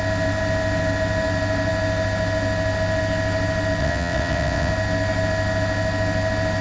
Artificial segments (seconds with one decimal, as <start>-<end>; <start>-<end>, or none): 3.8-4.7